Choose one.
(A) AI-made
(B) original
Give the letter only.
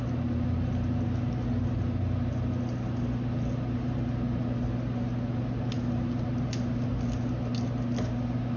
B